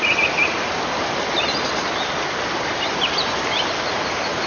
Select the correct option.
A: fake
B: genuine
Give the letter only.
B